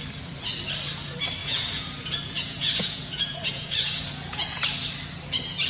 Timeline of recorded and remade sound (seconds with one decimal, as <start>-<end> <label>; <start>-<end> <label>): 0.0-1.4 recorded; 1.4-4.6 remade; 4.6-5.7 recorded